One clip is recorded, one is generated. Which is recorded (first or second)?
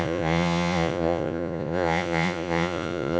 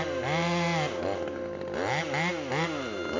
second